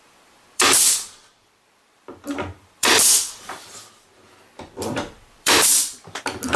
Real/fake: fake